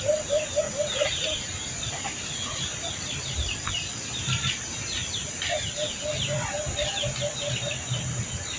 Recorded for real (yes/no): yes